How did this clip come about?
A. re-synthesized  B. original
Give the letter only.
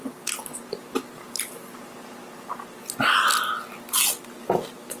B